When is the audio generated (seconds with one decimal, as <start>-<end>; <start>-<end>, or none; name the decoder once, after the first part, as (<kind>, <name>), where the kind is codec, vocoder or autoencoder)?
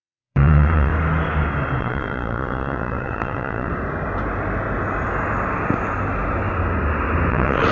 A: 0.0-0.9 (vocoder, WaveNeXt); 1.8-3.7; 7.3-7.7